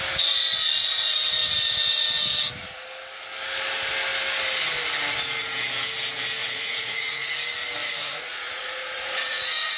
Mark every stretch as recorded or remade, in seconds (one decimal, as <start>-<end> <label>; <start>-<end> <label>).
0.0-6.4 recorded; 6.4-7.3 remade; 7.3-7.8 recorded; 7.8-9.8 remade